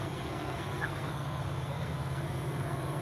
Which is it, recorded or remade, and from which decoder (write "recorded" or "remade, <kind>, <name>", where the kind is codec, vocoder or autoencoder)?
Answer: remade, codec, SNAC